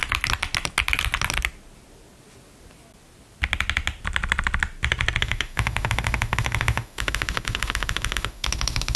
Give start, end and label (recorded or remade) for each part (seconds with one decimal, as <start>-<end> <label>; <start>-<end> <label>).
0.0-5.2 recorded; 5.2-9.0 remade